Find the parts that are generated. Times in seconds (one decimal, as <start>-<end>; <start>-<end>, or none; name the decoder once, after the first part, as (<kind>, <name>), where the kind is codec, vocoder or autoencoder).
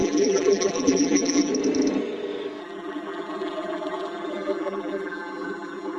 0.0-1.5 (vocoder, BigVGAN v2); 2.6-6.0